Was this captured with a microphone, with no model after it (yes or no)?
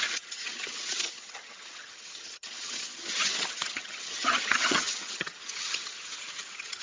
no